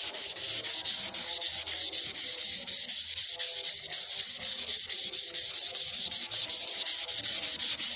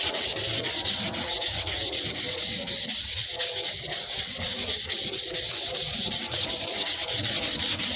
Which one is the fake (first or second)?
second